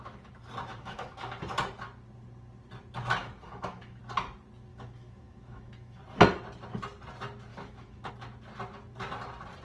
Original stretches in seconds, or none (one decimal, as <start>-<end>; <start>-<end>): 0.0-0.7; 1.3-3.2; 4.0-4.7; 6.0-7.5; 8.1-9.6